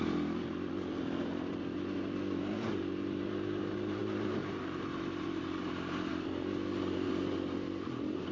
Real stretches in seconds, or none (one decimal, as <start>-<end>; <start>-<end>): none